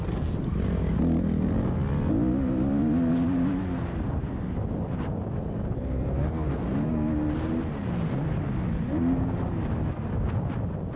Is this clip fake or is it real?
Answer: real